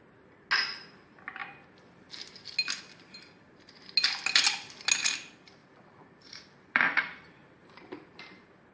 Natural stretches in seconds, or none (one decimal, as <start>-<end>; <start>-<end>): 0.0-5.6; 8.2-8.7